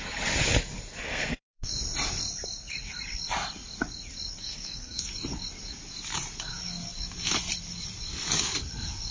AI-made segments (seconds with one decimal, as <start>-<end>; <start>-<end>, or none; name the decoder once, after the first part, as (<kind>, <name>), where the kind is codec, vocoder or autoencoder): 1.1-1.7 (codec, SNAC); 4.4-5.1